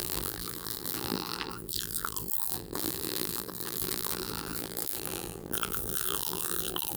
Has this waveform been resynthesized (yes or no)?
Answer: yes